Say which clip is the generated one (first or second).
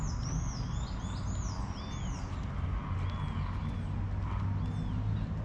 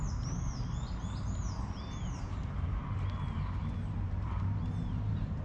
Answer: second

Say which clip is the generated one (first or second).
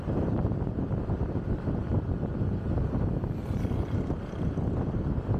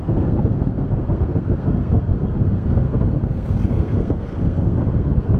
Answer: second